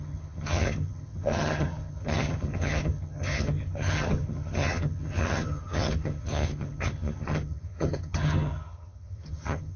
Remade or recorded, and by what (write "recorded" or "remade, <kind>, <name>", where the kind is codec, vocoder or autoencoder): remade, vocoder, HiFi-GAN